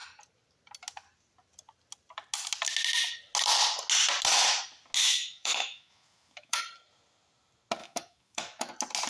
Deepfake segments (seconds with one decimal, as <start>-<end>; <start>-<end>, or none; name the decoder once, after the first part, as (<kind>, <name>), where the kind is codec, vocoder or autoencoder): 5.0-6.6 (autoencoder, DAC-VAE); 7.8-8.7